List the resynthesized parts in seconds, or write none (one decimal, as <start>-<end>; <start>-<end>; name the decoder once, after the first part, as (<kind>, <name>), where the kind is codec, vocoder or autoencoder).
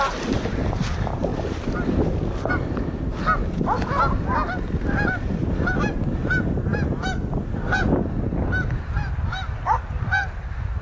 none